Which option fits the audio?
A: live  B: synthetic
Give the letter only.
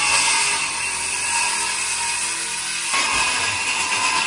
A